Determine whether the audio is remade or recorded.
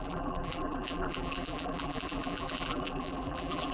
remade